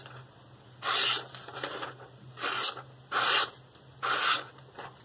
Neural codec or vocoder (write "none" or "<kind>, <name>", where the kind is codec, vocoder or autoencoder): none